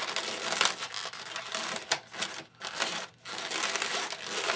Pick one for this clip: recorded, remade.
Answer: recorded